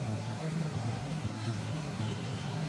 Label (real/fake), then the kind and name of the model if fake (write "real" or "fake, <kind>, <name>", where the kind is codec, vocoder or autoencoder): fake, codec, SNAC